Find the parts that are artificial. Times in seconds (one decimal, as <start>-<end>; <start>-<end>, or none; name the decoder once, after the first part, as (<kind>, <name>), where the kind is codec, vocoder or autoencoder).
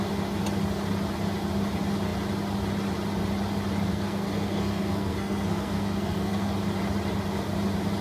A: 3.9-6.5 (codec, SNAC)